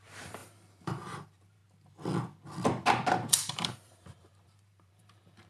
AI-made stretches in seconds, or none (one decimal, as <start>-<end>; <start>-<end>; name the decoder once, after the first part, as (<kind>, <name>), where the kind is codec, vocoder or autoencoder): 0.0-1.6 (vocoder, BigVGAN v2); 3.3-5.5